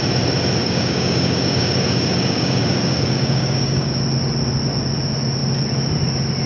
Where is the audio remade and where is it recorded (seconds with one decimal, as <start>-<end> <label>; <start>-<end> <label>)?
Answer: 0.0-0.6 recorded; 0.6-4.0 remade; 4.0-6.5 recorded